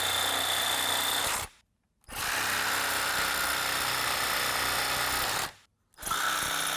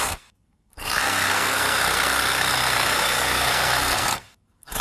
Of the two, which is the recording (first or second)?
first